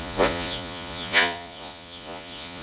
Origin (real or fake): fake